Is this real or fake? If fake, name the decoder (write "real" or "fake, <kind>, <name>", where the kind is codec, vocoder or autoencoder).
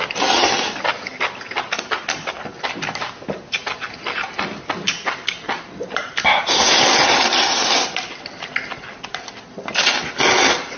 real